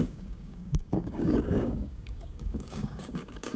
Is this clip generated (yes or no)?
yes